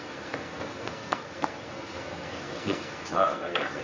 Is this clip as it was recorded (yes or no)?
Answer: no